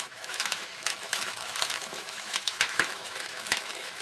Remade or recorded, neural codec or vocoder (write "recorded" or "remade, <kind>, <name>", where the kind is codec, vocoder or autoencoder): remade, autoencoder, DAC-VAE